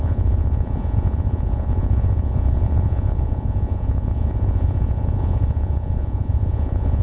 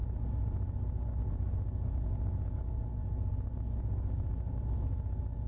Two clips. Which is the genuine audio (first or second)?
second